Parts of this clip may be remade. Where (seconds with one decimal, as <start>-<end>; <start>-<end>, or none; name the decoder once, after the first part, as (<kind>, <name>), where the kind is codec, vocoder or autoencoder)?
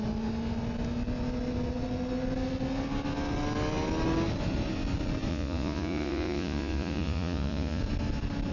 5.3-7.8 (vocoder, Vocos)